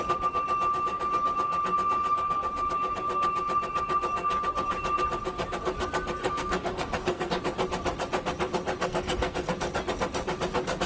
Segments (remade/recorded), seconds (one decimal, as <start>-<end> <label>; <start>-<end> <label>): 0.0-6.2 recorded; 6.2-7.3 remade; 7.3-8.8 recorded; 8.8-9.5 remade; 9.5-10.9 recorded